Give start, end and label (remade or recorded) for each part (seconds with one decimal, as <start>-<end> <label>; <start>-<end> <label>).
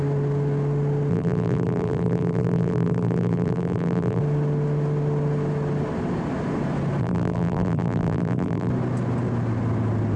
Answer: 0.0-1.1 recorded; 1.1-4.2 remade; 4.2-7.0 recorded; 7.0-8.7 remade; 8.7-10.2 recorded